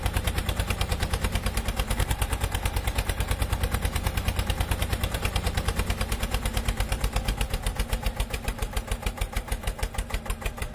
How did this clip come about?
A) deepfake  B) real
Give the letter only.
A